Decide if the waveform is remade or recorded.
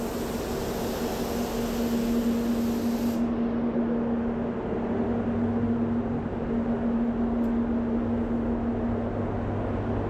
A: recorded